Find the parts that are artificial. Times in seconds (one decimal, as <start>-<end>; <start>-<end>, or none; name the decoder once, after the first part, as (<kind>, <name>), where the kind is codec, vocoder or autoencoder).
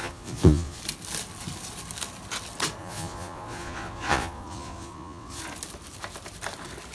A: 0.0-0.8 (vocoder, Vocos); 2.8-5.4